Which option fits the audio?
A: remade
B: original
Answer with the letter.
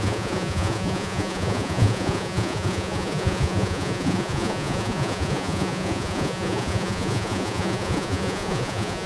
A